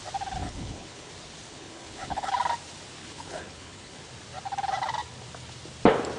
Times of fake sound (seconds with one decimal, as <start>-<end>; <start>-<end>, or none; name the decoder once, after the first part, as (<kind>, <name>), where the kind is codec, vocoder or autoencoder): 0.4-1.1 (codec, HILCodec); 1.5-2.3; 3.0-4.0